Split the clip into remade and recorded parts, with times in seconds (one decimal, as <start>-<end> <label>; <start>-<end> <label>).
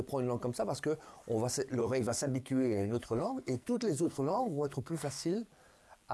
0.0-1.8 recorded; 1.8-5.5 remade; 5.5-6.1 recorded